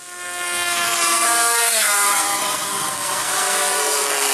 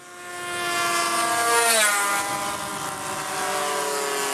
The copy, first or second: first